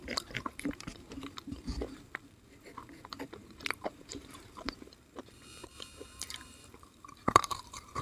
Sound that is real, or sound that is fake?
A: fake